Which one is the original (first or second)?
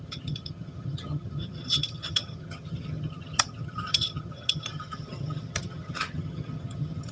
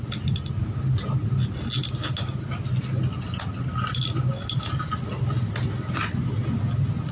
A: second